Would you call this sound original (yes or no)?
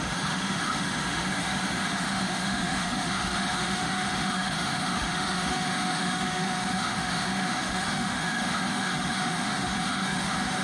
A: no